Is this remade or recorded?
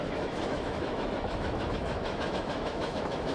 remade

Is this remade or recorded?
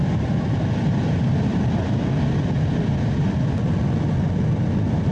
recorded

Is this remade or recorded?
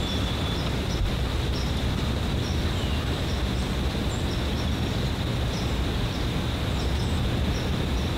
recorded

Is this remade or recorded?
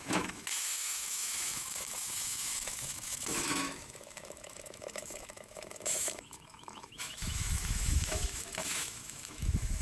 remade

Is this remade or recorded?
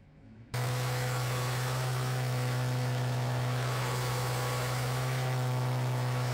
remade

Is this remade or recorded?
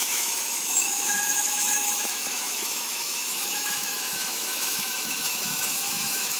remade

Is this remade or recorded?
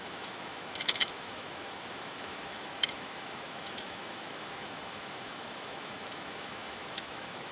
remade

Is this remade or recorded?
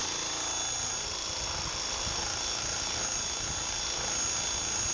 recorded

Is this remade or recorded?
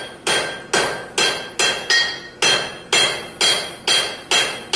recorded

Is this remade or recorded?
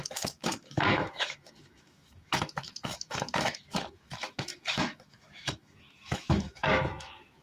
remade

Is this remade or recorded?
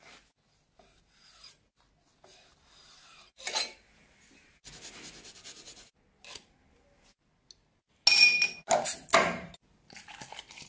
recorded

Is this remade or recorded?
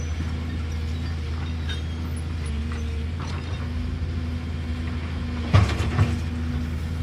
recorded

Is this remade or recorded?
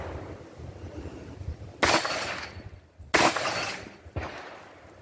recorded